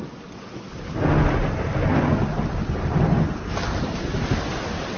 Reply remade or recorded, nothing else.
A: recorded